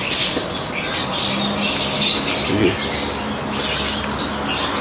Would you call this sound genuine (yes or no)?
yes